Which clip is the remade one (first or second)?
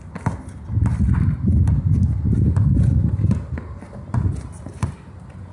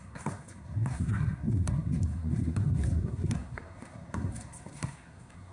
second